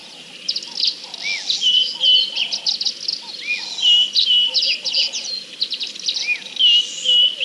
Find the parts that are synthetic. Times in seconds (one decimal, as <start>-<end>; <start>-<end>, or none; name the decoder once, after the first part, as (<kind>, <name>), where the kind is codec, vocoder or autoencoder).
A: none